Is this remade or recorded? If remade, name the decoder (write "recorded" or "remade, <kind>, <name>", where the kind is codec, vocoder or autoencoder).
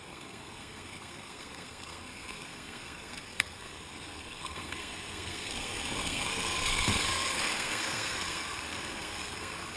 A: remade, codec, SNAC